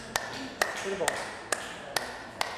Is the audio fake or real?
real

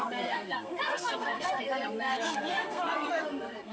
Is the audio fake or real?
fake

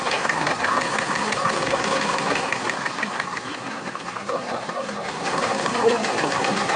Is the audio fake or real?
fake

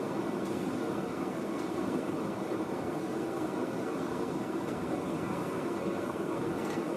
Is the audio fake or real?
fake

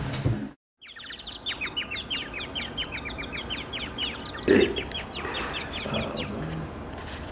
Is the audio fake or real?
real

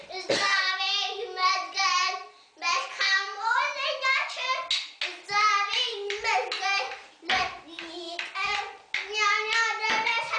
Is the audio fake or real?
real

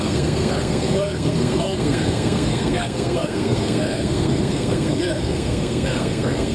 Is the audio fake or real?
fake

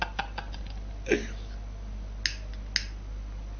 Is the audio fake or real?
real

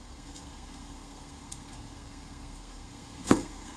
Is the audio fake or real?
fake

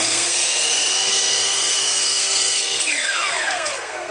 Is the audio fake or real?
fake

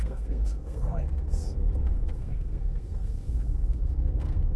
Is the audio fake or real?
fake